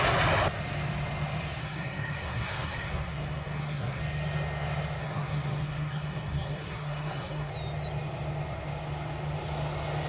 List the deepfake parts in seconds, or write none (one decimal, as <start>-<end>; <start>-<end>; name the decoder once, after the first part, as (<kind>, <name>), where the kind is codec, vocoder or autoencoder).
1.6-4.0 (codec, SNAC); 5.0-7.5